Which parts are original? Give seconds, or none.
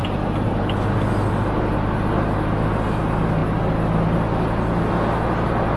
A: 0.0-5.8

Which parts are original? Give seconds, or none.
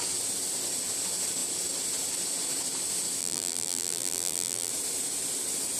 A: 0.0-3.2; 4.7-5.8